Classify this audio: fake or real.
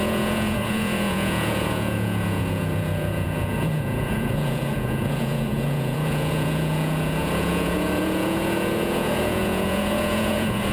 fake